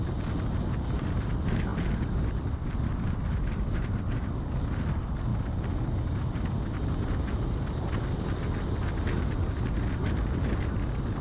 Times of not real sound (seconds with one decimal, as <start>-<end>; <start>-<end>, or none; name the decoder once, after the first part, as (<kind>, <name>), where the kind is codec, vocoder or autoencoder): none